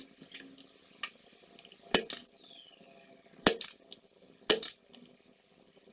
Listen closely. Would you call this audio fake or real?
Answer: real